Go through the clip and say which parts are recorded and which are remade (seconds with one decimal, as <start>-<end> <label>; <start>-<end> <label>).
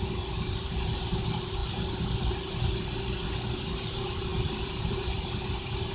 0.0-4.3 recorded; 4.3-5.1 remade; 5.1-5.9 recorded